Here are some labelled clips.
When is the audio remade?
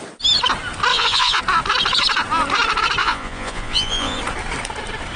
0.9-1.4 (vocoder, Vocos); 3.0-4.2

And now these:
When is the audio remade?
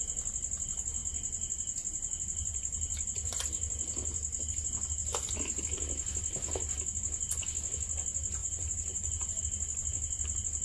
8.4-9.4 (vocoder, BigVGAN v2)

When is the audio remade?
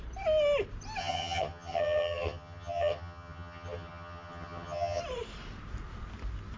1.0-5.0 (vocoder, HiFi-GAN)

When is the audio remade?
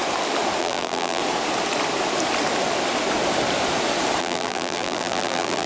0.6-1.2 (vocoder, BigVGAN v2); 4.2-5.7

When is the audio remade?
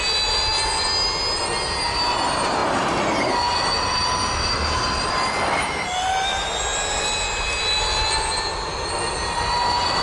none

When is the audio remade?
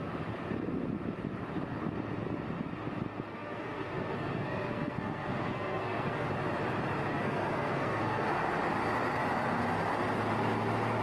3.3-6.3 (codec, SNAC); 7.1-8.4